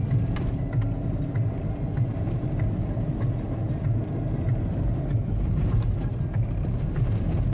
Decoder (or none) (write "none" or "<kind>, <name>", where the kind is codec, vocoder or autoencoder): none